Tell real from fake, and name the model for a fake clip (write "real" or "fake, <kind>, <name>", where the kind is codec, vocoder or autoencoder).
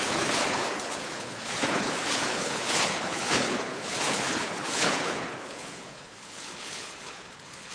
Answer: fake, codec, HILCodec